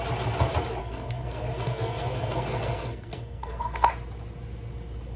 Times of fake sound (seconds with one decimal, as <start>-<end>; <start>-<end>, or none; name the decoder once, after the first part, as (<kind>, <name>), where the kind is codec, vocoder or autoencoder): 0.8-3.9 (codec, SNAC)